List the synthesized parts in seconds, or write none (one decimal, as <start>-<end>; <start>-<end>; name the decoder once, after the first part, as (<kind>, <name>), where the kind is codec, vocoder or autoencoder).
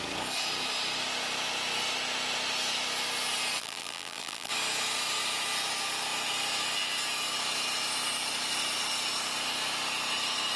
3.6-4.5 (vocoder, BigVGAN v2)